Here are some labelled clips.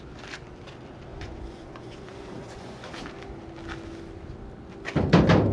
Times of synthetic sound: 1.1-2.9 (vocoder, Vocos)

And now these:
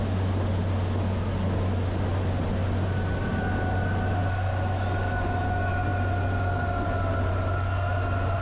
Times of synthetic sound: none

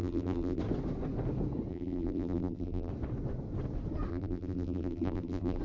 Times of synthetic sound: 0.0-0.6 (vocoder, BigVGAN v2); 1.7-2.9; 4.1-5.6

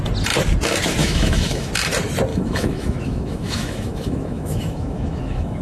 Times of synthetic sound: 1.0-1.7 (autoencoder, DAC-VAE); 2.3-5.6

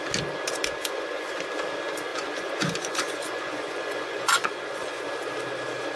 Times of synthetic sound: 0.8-1.3 (vocoder, Vocos); 2.1-5.0